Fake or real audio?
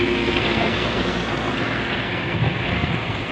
fake